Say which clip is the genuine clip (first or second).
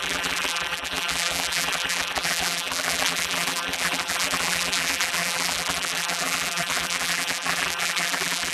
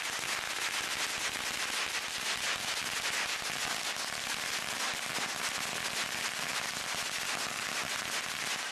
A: second